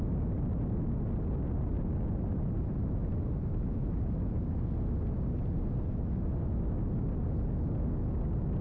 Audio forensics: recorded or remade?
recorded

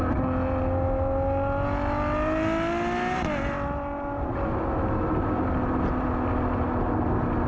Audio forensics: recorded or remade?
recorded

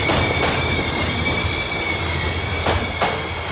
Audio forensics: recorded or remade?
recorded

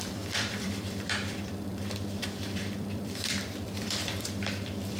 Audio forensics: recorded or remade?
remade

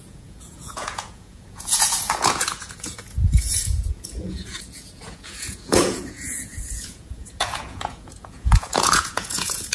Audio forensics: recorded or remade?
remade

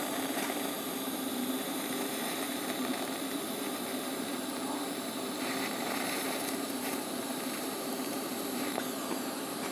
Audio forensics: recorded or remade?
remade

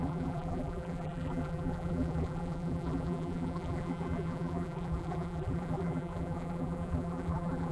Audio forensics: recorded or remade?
remade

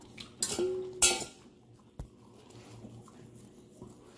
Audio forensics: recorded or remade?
recorded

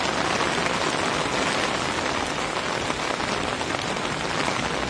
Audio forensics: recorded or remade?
recorded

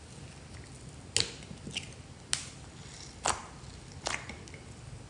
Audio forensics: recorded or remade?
recorded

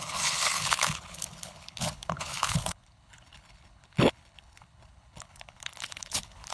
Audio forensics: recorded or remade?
remade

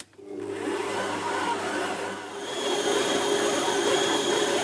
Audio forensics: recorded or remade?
recorded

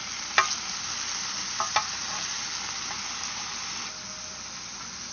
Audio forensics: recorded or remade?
recorded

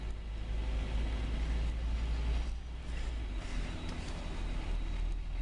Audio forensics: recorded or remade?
recorded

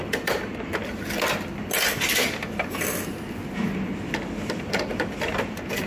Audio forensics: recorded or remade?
remade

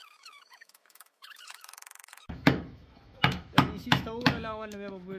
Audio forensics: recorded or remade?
remade